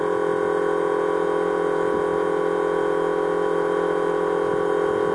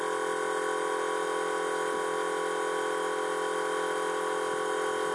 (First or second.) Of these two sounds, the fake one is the first